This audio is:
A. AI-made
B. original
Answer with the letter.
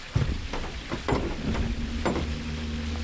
B